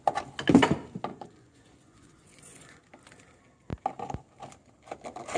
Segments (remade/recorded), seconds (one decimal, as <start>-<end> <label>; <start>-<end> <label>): 0.0-1.1 recorded; 1.1-2.8 remade; 2.8-5.4 recorded